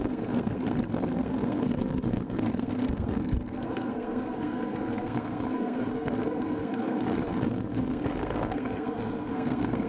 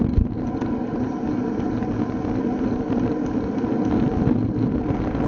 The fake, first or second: first